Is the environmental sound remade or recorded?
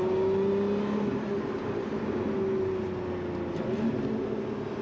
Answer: recorded